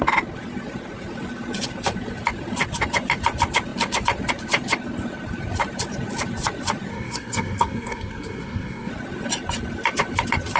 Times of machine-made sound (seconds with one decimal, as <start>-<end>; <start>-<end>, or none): 6.9-8.9